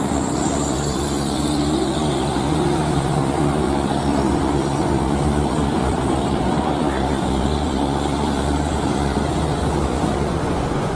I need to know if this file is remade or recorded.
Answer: remade